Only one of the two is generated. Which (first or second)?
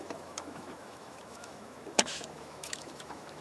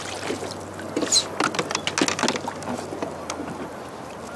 first